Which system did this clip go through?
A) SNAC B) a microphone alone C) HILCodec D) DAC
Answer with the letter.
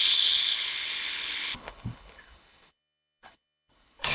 C